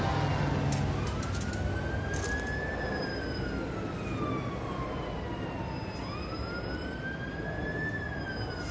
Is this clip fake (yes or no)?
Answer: no